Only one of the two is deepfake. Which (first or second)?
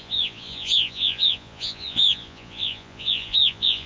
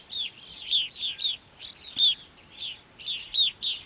first